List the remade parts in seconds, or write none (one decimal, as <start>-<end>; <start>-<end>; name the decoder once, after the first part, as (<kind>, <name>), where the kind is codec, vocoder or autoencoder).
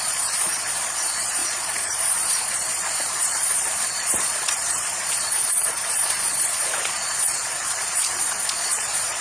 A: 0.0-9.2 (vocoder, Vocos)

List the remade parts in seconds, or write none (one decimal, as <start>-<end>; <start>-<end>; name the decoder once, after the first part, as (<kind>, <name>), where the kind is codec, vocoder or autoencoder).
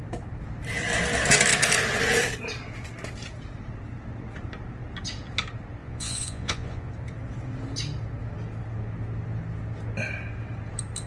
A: 5.8-6.9 (vocoder, Vocos)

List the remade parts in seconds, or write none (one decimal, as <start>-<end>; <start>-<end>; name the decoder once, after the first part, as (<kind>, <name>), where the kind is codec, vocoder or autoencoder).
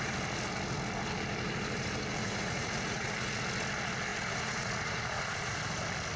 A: 2.2-3.4 (vocoder, Vocos); 4.1-5.6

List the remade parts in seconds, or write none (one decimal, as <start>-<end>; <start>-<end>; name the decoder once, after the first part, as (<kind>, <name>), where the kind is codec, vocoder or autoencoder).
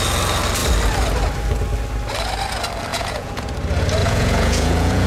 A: 2.9-3.5 (vocoder, Vocos); 4.0-5.1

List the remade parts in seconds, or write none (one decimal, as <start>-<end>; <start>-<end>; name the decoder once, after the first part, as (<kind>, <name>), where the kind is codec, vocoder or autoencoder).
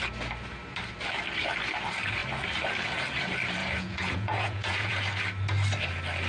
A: 3.6-5.0 (vocoder, Vocos)